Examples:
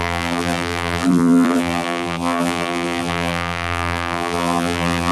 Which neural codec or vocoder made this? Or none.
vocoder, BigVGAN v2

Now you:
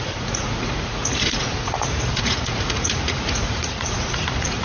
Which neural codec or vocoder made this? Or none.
vocoder, Vocos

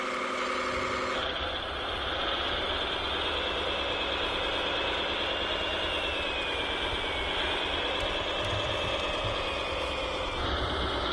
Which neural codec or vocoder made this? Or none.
none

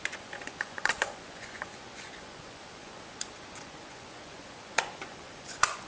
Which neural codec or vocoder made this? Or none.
vocoder, Vocos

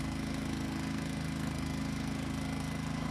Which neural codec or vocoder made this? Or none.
codec, SNAC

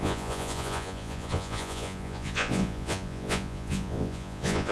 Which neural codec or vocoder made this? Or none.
vocoder, Vocos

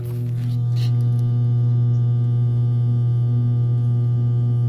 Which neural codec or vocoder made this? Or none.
none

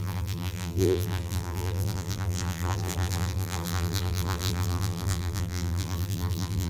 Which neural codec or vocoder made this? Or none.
vocoder, BigVGAN v2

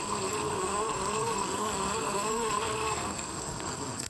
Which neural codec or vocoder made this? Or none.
codec, SNAC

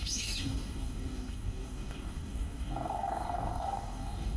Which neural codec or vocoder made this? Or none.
codec, DAC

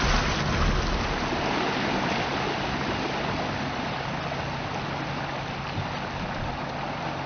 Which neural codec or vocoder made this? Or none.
none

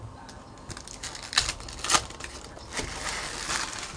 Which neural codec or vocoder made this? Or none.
none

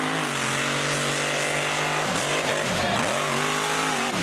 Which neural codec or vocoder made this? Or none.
none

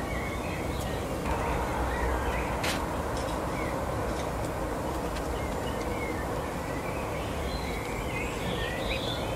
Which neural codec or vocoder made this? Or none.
none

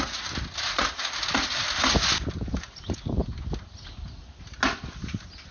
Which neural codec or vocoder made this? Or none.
none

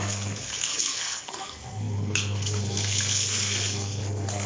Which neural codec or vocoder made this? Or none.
codec, SNAC